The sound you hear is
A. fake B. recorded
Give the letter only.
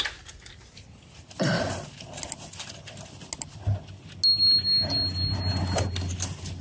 B